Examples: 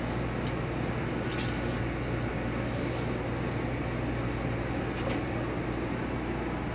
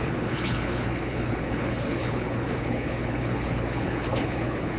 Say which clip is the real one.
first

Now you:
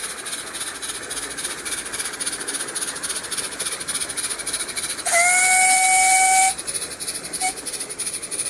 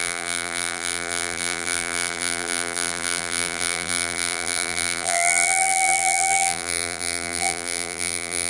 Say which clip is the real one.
first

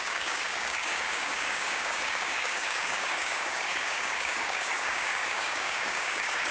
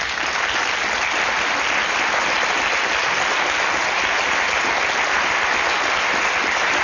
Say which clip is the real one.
second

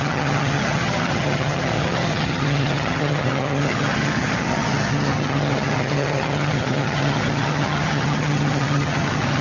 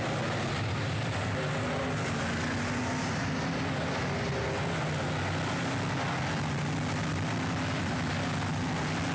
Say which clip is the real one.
second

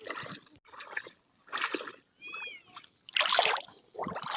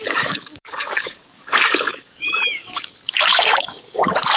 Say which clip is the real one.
first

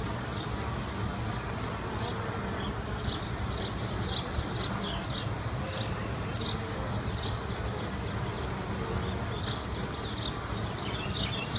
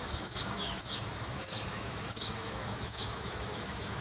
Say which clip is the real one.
first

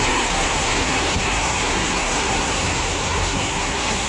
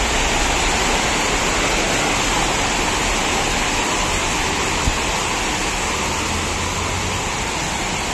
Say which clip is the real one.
second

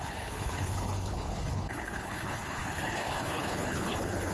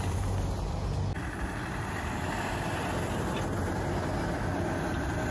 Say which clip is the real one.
second